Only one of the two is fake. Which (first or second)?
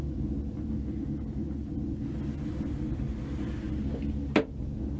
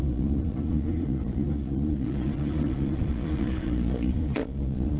second